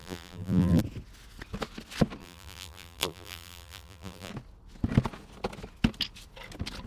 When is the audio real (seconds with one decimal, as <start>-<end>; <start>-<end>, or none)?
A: 0.8-2.2; 4.3-6.9